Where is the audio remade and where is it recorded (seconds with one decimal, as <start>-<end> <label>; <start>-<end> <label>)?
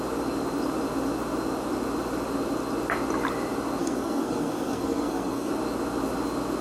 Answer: 0.0-3.8 recorded; 3.8-5.5 remade; 5.5-6.6 recorded